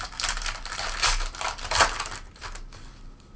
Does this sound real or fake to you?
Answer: real